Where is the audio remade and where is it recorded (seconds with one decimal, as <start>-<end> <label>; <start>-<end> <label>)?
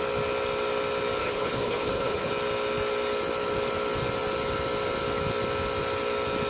0.0-1.2 recorded; 1.2-2.3 remade; 2.3-6.5 recorded